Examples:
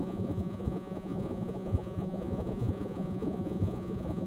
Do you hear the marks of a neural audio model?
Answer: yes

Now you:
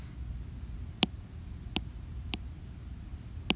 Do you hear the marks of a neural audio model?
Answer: no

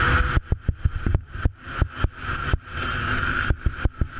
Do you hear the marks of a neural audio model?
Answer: no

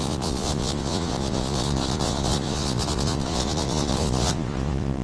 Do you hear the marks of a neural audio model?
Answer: yes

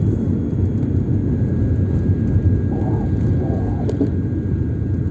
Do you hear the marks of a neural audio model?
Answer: no